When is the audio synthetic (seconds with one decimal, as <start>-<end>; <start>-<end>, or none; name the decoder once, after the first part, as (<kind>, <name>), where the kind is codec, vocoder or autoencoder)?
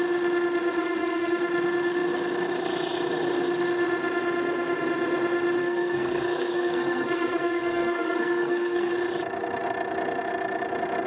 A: 0.8-1.4 (codec, SNAC); 5.6-8.9